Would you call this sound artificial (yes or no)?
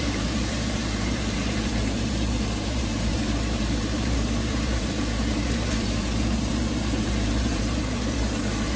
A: yes